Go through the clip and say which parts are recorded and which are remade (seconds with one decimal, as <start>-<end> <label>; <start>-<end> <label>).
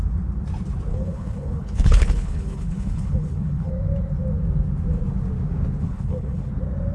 0.0-0.9 recorded; 0.9-3.7 remade; 3.7-5.8 recorded; 5.8-6.5 remade; 6.5-6.9 recorded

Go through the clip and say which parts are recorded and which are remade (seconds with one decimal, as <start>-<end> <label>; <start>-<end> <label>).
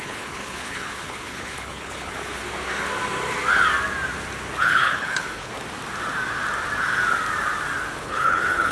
0.0-2.4 remade; 2.4-4.6 recorded; 4.6-5.5 remade; 5.5-8.0 recorded; 8.0-8.7 remade